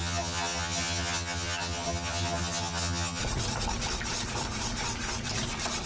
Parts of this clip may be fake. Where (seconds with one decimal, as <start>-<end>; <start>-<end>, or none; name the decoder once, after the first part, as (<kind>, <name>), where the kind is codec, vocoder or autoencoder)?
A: 0.0-3.2 (vocoder, HiFi-GAN)